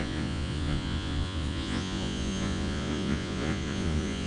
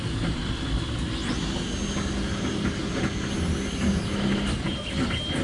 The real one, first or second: second